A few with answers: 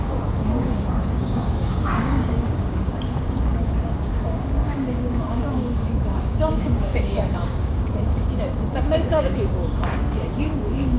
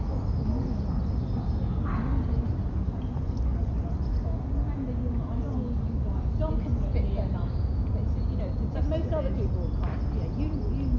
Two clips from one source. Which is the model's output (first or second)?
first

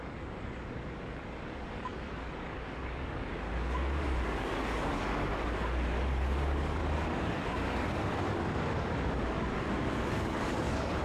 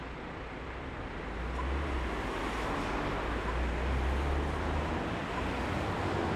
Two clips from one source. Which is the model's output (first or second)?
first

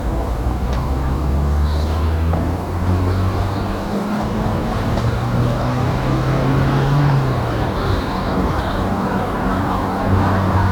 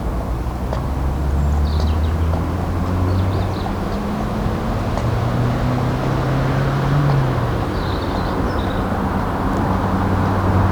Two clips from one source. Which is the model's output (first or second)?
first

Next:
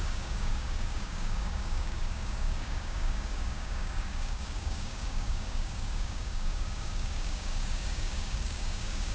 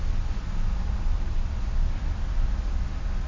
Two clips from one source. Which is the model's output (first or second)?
first